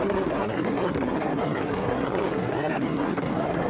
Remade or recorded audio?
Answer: remade